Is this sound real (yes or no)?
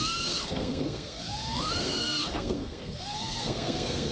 no